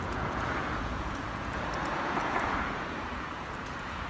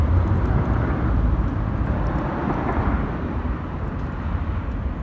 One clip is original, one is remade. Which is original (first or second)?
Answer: second